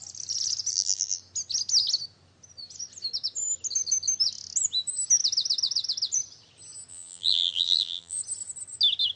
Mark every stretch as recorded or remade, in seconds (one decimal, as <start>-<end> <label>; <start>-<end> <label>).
0.0-0.7 recorded; 0.7-1.2 remade; 1.2-6.9 recorded; 6.9-8.2 remade; 8.2-9.2 recorded